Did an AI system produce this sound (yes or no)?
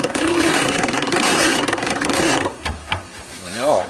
yes